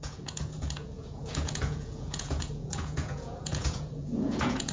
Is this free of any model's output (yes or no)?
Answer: no